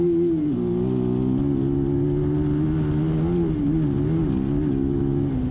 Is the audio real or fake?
real